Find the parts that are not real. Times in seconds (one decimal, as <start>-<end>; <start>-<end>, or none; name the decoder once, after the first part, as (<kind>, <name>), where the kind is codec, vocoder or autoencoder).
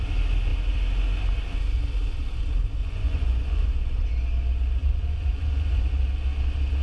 2.8-4.0 (vocoder, Vocos); 4.8-5.9